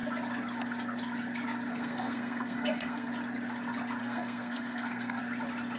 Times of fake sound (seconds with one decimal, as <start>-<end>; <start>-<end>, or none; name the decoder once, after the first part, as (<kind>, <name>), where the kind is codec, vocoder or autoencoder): 1.7-3.1 (codec, SNAC); 4.0-5.2